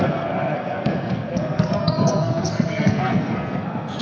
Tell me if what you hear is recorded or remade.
remade